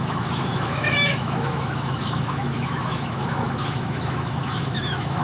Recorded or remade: remade